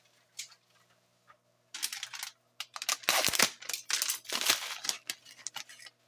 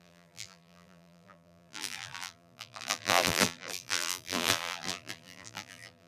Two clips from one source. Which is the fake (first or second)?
second